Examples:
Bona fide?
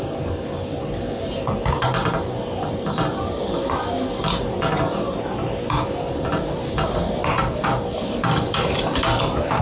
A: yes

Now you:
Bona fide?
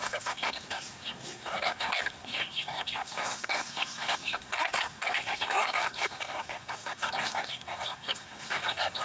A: no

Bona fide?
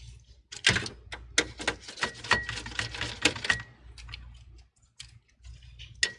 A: yes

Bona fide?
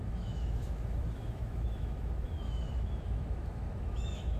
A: no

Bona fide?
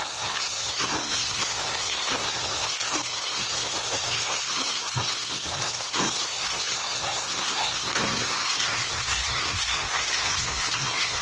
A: no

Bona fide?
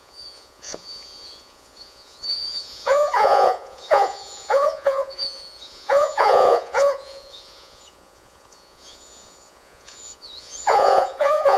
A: no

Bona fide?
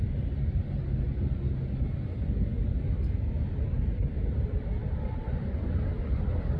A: yes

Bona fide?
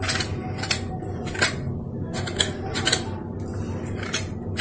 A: yes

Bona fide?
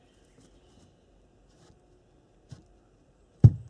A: yes